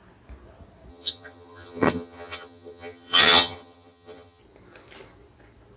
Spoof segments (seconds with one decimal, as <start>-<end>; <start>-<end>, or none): 0.9-4.4